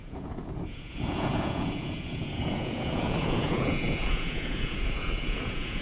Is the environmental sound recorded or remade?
remade